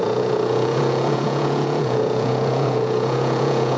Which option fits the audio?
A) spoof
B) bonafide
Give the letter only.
A